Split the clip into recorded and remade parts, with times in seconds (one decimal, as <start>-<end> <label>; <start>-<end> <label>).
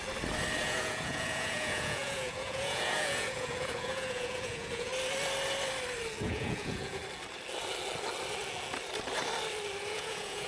0.0-0.6 recorded; 0.6-4.9 remade; 4.9-6.2 recorded; 6.2-7.0 remade; 7.0-9.8 recorded; 9.8-10.5 remade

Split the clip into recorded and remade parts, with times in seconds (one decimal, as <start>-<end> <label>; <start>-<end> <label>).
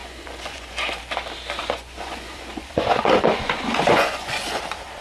0.0-1.0 remade; 1.0-1.6 recorded; 1.6-4.6 remade; 4.6-5.0 recorded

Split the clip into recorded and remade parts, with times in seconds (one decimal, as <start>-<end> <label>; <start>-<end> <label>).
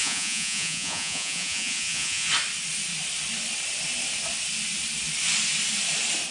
0.0-2.3 remade; 2.3-6.3 recorded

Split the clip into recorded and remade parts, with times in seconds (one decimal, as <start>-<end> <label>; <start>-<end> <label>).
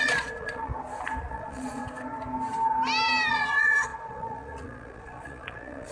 0.0-0.7 remade; 0.7-1.3 recorded; 1.3-1.8 remade; 1.8-3.3 recorded; 3.3-5.9 remade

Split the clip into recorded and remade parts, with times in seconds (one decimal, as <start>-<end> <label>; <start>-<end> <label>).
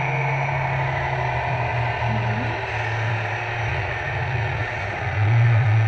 0.0-3.7 recorded; 3.7-5.9 remade